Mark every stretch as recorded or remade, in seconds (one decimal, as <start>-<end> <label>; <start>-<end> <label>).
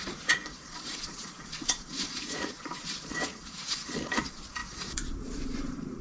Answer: 0.0-6.0 remade